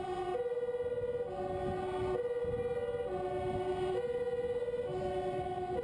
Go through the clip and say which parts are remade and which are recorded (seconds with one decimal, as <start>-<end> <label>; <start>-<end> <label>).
0.0-5.8 recorded